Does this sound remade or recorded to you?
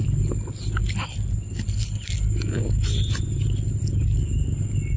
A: recorded